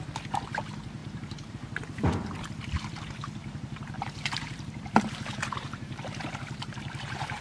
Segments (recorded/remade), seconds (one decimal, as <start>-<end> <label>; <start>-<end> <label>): 0.0-1.0 recorded; 1.0-1.5 remade; 1.5-3.4 recorded; 3.4-7.4 remade